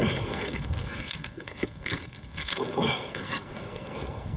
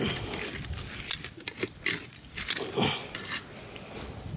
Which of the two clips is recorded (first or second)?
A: second